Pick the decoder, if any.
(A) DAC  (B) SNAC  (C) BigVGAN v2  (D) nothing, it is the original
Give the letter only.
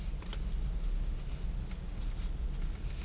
D